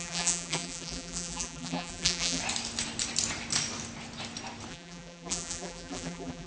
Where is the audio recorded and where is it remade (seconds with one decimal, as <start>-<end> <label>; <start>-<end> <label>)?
0.0-2.4 remade; 2.4-4.7 recorded; 4.7-6.5 remade